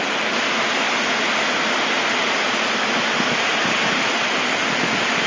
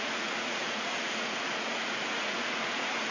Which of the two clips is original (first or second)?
first